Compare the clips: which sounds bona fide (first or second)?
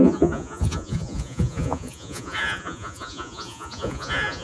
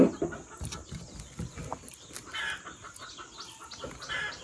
second